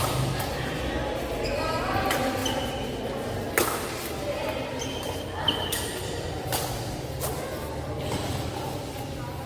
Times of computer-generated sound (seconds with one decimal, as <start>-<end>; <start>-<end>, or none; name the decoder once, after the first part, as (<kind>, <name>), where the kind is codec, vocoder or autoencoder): 0.0-0.8 (vocoder, BigVGAN v2); 4.4-5.9